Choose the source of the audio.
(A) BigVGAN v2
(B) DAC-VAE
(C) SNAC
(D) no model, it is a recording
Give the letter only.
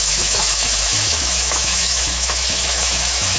B